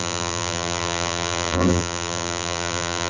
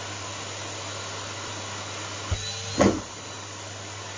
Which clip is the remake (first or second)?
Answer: first